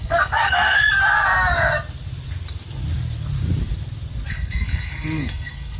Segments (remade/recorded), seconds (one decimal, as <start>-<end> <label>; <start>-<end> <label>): 0.0-0.8 remade; 0.8-4.3 recorded; 4.3-5.8 remade